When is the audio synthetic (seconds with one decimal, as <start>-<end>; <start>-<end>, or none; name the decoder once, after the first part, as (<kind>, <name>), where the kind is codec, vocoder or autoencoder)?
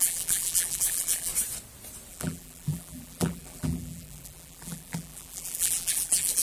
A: 0.0-1.3 (vocoder, BigVGAN v2); 2.1-6.4